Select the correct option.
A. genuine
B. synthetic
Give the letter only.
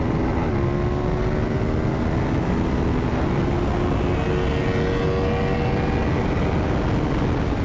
A